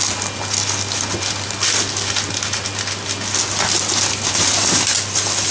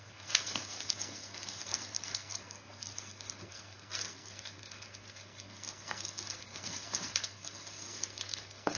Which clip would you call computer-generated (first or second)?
second